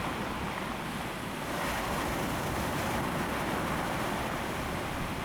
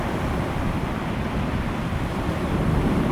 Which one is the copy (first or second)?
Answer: second